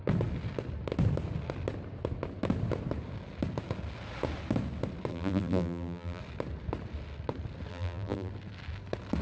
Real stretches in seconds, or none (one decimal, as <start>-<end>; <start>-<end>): 0.0-5.1; 6.2-7.7; 8.3-9.2